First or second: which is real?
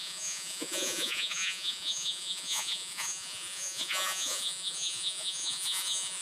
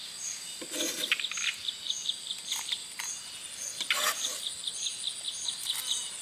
second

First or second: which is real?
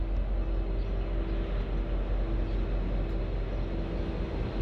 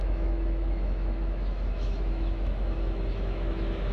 first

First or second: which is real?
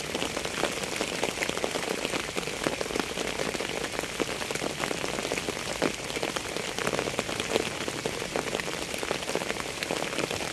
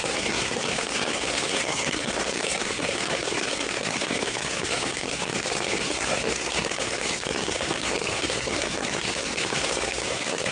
first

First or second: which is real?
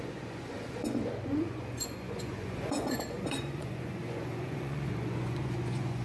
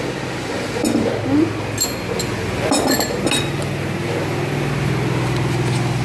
second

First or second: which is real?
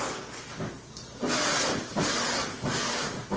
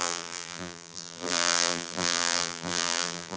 first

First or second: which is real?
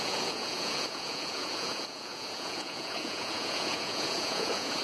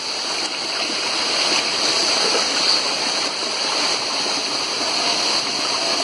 second